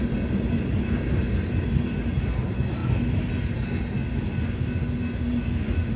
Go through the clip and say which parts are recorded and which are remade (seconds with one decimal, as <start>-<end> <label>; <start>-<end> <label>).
0.0-6.0 recorded